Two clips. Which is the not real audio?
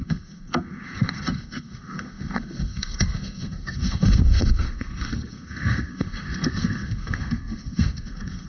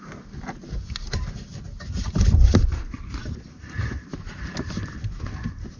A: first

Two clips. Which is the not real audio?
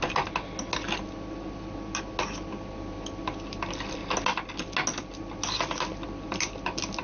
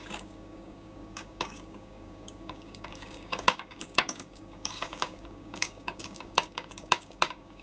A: second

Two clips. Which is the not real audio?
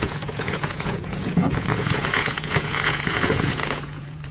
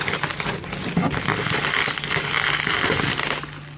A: first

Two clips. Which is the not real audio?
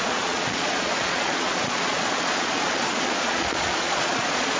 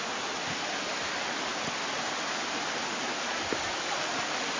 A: first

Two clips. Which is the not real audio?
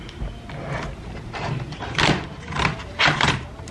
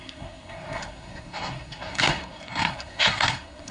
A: second